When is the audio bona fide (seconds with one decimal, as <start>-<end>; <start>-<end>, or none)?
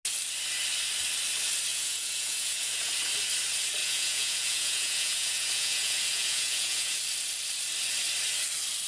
0.0-1.7; 2.9-3.8; 7.0-8.9